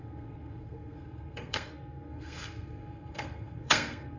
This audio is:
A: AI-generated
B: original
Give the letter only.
A